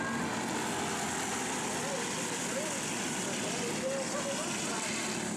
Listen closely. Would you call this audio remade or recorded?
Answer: recorded